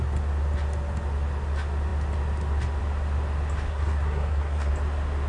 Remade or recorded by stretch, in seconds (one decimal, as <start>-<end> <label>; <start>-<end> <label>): 0.0-3.7 recorded; 3.7-4.7 remade; 4.7-5.3 recorded